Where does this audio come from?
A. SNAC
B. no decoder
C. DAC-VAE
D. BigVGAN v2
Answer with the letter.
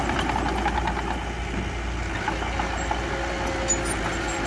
B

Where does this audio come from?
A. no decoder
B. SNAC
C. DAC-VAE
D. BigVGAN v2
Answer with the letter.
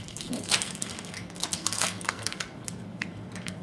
B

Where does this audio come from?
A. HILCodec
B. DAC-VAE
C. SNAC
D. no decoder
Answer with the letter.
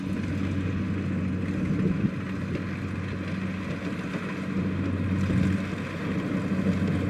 D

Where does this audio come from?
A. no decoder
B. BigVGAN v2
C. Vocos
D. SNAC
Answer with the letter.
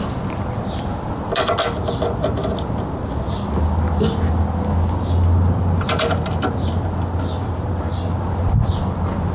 A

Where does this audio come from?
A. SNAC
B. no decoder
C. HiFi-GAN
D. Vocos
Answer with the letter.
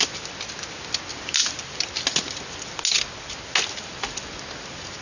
B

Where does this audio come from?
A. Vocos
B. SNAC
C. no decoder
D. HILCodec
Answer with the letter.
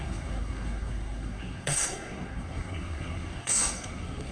B